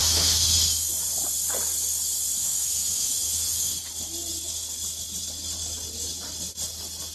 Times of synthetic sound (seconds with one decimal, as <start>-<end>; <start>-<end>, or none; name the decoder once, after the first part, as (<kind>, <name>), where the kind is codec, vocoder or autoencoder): 0.0-0.9 (autoencoder, DAC-VAE); 2.4-3.9